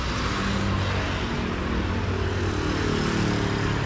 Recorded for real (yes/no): yes